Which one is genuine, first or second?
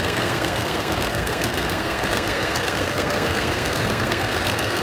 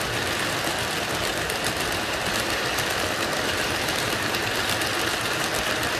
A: second